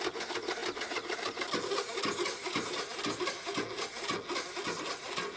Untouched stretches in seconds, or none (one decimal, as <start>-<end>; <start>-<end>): 0.0-5.4